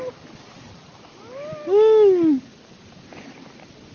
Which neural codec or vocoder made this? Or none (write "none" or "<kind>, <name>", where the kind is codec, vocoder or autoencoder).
none